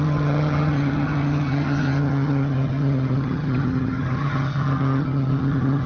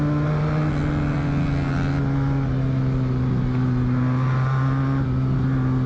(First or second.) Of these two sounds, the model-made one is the first